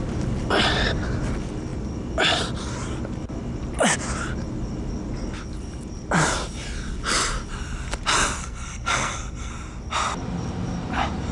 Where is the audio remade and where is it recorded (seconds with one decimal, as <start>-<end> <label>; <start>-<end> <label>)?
0.0-8.4 recorded; 8.4-9.5 remade; 9.5-11.3 recorded